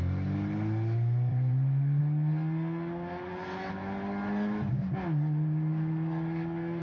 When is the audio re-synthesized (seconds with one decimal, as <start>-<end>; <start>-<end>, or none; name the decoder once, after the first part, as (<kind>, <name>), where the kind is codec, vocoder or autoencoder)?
1.3-2.0 (vocoder, BigVGAN v2)

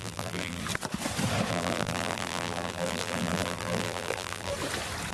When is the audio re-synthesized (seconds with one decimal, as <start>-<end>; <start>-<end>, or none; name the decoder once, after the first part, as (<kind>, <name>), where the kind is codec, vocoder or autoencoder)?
0.0-0.6 (vocoder, BigVGAN v2); 1.5-4.5

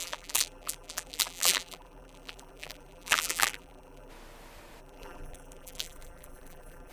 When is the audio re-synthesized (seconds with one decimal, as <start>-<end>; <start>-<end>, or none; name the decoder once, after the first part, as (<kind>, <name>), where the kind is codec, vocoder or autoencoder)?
0.0-4.1 (vocoder, BigVGAN v2); 4.8-6.9

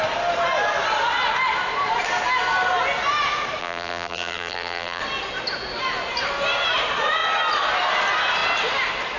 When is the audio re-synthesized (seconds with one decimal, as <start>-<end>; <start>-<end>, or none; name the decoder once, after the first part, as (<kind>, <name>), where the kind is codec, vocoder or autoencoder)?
3.6-5.0 (vocoder, BigVGAN v2)

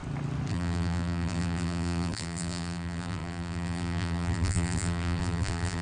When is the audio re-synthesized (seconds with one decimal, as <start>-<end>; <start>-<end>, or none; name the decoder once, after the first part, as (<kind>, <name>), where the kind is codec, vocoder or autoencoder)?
0.5-5.8 (vocoder, BigVGAN v2)

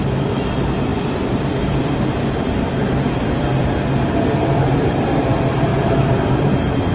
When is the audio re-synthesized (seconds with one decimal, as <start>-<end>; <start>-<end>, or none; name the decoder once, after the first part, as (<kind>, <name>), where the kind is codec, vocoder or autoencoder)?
0.9-5.0 (vocoder, BigVGAN v2); 5.7-6.9

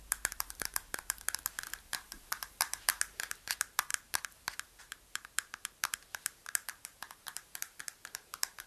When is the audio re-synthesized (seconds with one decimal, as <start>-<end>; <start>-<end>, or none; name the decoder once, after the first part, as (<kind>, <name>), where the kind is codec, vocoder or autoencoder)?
0.0-3.9 (vocoder, BigVGAN v2); 4.8-8.7

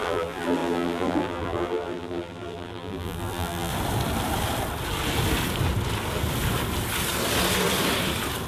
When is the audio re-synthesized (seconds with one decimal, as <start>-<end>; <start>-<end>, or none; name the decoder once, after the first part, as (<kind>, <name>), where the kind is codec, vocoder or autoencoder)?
0.0-3.7 (vocoder, BigVGAN v2)